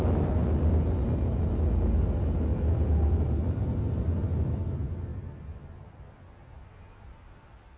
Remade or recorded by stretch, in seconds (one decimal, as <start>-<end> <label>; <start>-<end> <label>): 0.0-2.5 recorded; 2.5-3.3 remade; 3.3-5.1 recorded; 5.1-7.3 remade; 7.3-7.8 recorded